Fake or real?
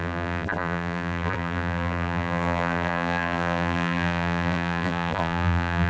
fake